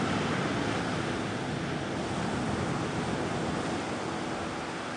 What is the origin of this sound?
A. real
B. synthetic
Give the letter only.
A